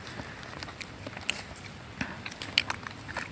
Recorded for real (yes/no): yes